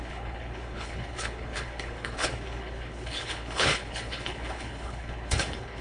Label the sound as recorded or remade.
remade